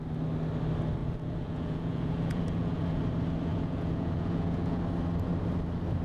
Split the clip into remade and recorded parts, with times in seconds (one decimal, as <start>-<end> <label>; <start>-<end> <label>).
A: 0.0-1.0 recorded; 1.0-3.0 remade; 3.0-3.5 recorded; 3.5-4.8 remade; 4.8-6.0 recorded

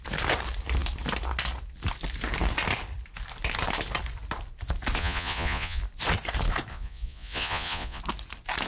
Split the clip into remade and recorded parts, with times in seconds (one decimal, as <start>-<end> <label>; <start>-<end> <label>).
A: 0.0-5.0 recorded; 5.0-5.8 remade; 5.8-6.7 recorded; 6.7-8.0 remade; 8.0-8.7 recorded

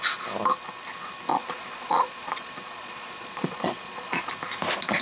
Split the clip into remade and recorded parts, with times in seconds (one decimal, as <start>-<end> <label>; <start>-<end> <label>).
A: 0.0-1.3 recorded; 1.3-4.3 remade; 4.3-5.0 recorded